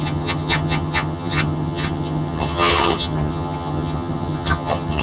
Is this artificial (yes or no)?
yes